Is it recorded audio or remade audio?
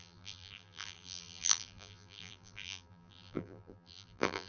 remade